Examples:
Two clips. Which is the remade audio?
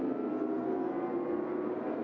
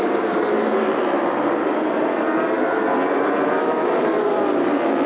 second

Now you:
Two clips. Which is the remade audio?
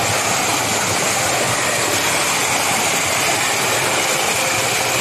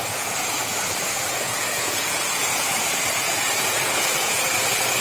second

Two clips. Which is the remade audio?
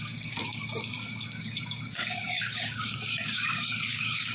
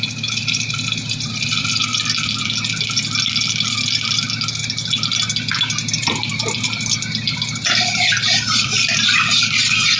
first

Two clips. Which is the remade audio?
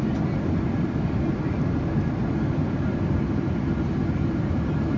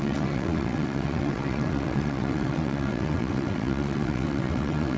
second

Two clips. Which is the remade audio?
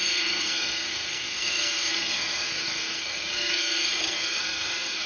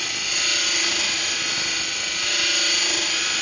first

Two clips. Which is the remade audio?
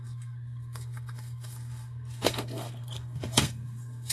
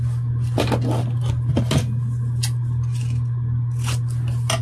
first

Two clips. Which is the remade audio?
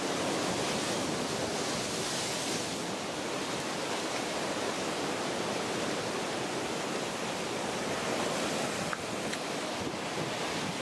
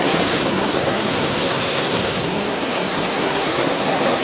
second